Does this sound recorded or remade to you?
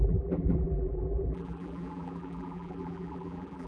remade